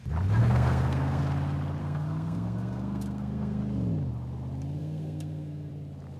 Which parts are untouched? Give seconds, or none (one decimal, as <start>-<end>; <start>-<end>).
0.0-0.4; 1.2-1.8; 3.6-4.8; 5.7-6.2